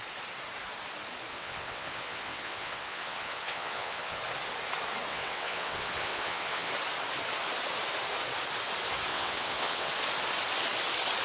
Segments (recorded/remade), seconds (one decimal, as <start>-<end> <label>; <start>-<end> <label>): 0.0-1.3 recorded; 1.3-4.2 remade; 4.2-5.1 recorded; 5.1-6.7 remade; 6.7-9.1 recorded; 9.1-9.9 remade; 9.9-11.2 recorded